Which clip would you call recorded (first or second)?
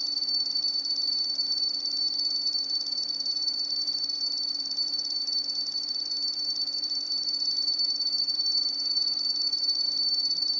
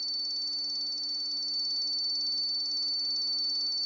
second